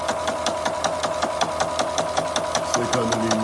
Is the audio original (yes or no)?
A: yes